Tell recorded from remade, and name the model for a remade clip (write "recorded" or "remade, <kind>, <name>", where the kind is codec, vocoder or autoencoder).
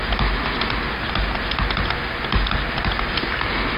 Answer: recorded